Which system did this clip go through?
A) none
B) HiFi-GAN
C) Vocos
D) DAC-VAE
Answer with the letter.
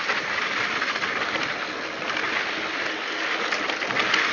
A